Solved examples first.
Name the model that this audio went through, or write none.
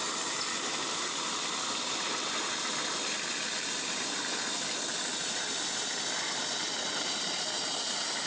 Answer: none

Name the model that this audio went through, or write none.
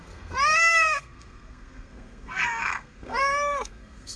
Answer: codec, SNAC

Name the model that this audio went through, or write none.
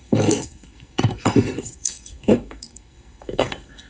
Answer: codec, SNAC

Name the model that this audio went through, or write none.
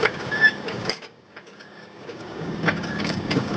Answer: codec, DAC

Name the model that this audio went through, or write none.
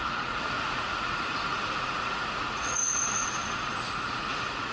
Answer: vocoder, Vocos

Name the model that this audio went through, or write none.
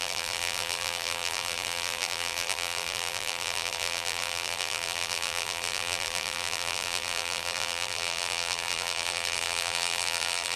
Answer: vocoder, BigVGAN v2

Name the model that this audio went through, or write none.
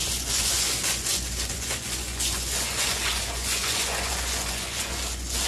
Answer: vocoder, Vocos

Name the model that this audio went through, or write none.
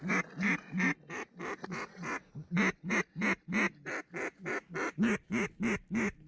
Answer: none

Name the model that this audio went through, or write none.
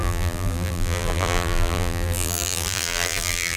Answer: vocoder, BigVGAN v2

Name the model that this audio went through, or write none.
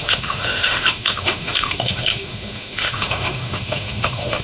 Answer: autoencoder, DAC-VAE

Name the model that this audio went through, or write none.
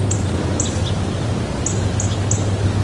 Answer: none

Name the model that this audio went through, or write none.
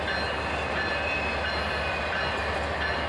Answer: none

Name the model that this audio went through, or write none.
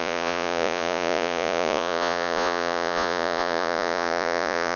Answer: vocoder, Vocos